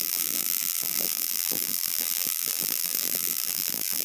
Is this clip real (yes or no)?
no